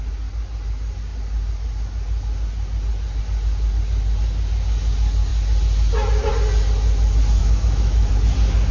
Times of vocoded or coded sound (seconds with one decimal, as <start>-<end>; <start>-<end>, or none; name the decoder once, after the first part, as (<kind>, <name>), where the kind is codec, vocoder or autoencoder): 7.4-8.1 (autoencoder, DAC-VAE)